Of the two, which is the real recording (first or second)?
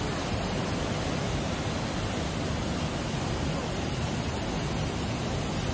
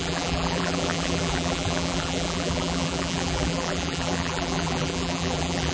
first